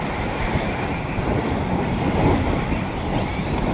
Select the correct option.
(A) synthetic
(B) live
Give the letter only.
A